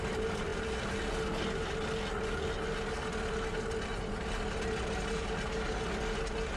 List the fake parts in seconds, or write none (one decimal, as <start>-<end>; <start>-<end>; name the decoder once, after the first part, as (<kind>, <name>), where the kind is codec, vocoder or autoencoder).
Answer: none